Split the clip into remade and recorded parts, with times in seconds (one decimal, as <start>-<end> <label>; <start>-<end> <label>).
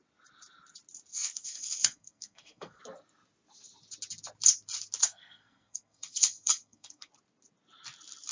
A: 0.0-1.1 recorded; 1.1-2.8 remade; 2.8-5.0 recorded; 5.0-7.1 remade; 7.1-8.3 recorded